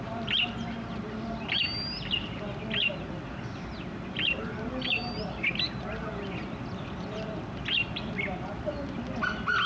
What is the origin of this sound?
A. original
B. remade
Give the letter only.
A